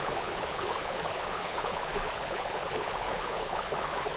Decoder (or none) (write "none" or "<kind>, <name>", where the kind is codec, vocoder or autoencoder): codec, HILCodec